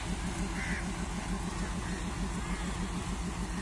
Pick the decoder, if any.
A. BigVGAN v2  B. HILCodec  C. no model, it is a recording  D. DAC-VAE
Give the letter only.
C